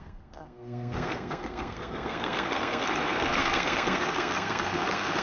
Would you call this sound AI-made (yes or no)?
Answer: yes